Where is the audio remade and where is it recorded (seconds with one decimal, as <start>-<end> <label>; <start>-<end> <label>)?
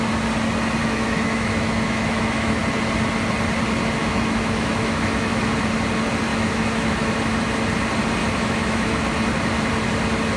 0.0-0.8 recorded; 0.8-2.6 remade; 2.6-4.0 recorded; 4.0-5.5 remade; 5.5-6.3 recorded; 6.3-7.1 remade; 7.1-8.2 recorded; 8.2-9.0 remade; 9.0-10.4 recorded